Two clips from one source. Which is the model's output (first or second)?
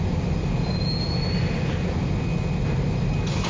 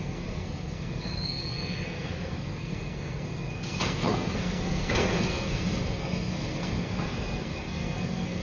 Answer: second